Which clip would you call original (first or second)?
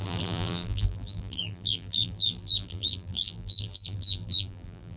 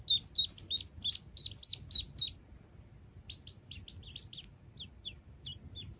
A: second